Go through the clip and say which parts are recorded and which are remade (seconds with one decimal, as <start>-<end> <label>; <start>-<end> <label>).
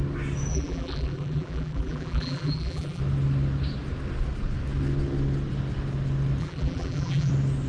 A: 0.0-0.5 recorded; 0.5-3.0 remade; 3.0-6.4 recorded; 6.4-7.3 remade; 7.3-7.7 recorded